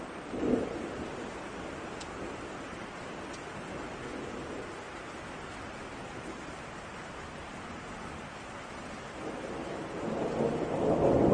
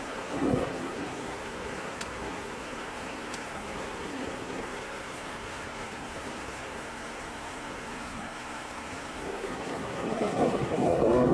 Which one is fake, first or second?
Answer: second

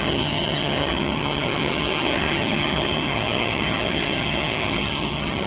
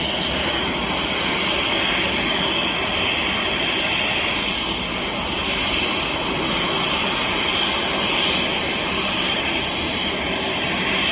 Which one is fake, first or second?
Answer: first